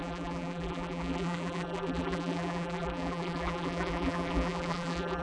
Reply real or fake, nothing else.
fake